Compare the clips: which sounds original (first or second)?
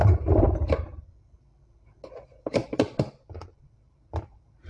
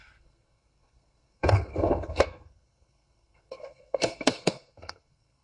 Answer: first